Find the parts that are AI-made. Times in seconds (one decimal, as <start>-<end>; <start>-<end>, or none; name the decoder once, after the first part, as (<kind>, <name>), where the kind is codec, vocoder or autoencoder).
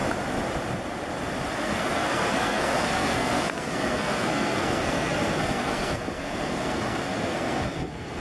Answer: 1.5-8.2 (codec, SNAC)